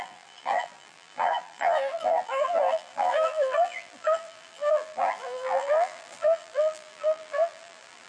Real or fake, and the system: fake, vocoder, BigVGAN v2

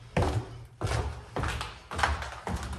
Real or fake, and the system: real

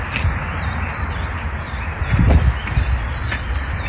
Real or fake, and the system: real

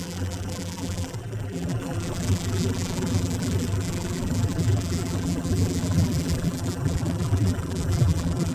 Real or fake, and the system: fake, vocoder, BigVGAN v2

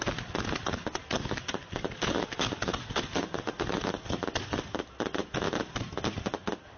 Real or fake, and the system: real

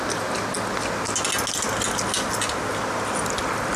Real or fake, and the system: real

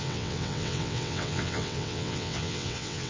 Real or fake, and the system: fake, vocoder, WaveNeXt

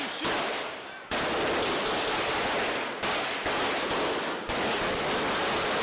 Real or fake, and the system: real